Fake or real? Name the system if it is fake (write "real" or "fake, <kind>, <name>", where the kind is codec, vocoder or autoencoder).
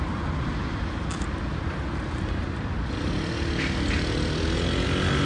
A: real